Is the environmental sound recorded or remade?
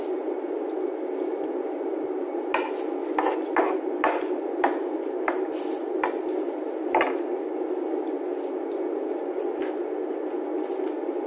recorded